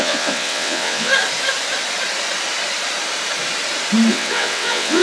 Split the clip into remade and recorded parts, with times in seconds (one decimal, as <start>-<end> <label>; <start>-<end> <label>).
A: 0.0-1.1 remade; 1.1-4.1 recorded; 4.1-5.0 remade